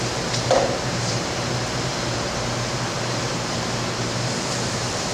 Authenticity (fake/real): fake